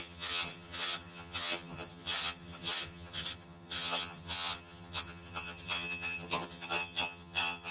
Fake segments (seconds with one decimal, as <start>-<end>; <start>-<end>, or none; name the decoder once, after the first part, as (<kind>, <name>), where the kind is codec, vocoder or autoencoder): 0.0-7.7 (vocoder, HiFi-GAN)